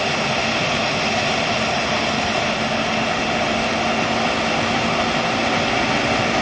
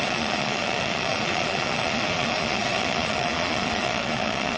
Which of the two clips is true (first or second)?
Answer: first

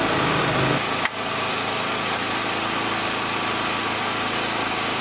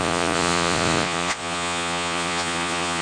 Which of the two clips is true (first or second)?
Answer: first